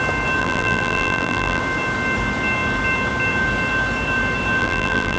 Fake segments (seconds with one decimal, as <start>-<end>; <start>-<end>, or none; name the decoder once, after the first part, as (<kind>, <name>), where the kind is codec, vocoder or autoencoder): 0.4-1.6 (vocoder, BigVGAN v2); 4.6-5.2